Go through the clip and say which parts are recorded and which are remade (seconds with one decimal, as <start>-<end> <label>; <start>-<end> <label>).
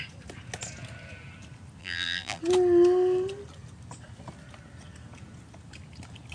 0.0-1.8 recorded; 1.8-2.4 remade; 2.4-6.3 recorded